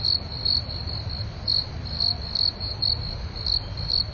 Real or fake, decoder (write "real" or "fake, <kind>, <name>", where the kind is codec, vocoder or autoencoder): real